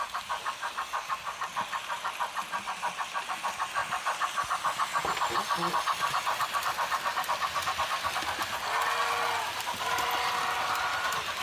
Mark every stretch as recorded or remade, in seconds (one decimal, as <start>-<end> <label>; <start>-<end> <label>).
0.0-11.4 recorded